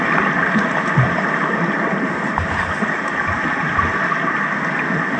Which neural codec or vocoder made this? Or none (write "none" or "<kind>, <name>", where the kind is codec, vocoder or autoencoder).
none